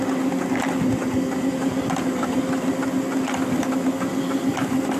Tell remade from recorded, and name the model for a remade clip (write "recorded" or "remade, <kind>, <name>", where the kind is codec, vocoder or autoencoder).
recorded